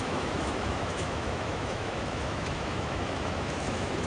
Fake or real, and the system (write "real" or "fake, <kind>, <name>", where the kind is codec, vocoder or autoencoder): fake, autoencoder, DAC-VAE